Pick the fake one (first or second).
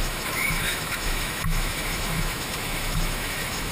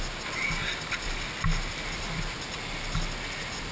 first